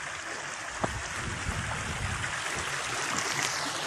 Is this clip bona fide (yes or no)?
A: yes